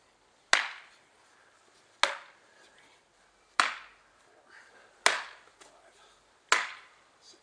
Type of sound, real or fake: real